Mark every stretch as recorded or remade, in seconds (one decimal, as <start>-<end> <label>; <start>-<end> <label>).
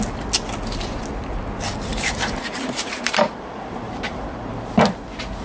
0.0-1.9 recorded; 1.9-4.5 remade; 4.5-5.4 recorded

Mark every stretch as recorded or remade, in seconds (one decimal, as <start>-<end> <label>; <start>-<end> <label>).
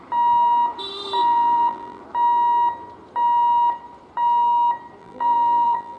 0.0-1.2 recorded; 1.2-2.0 remade; 2.0-5.0 recorded; 5.0-6.0 remade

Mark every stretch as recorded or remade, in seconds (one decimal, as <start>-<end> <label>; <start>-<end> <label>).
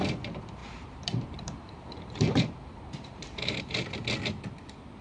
0.0-0.6 recorded; 0.6-3.6 remade; 3.6-5.0 recorded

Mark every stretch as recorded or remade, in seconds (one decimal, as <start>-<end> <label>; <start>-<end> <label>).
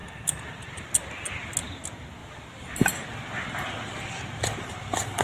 0.0-0.9 remade; 0.9-2.2 recorded; 2.2-2.9 remade; 2.9-5.2 recorded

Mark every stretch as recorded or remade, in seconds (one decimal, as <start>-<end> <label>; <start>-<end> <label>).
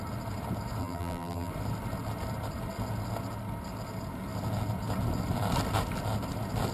0.0-0.8 recorded; 0.8-1.5 remade; 1.5-6.7 recorded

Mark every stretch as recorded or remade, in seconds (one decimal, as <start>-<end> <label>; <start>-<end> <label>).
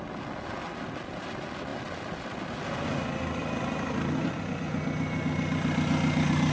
0.0-1.7 recorded; 1.7-2.6 remade; 2.6-6.5 recorded